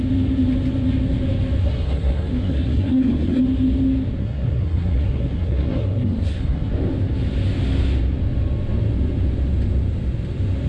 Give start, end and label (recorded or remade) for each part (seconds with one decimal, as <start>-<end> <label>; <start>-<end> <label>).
0.0-1.6 recorded; 1.6-3.4 remade; 3.4-4.2 recorded; 4.2-6.7 remade; 6.7-10.7 recorded